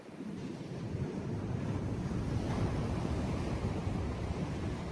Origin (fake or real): fake